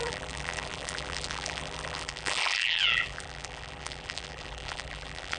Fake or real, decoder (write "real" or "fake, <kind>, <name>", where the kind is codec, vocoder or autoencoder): fake, vocoder, BigVGAN v2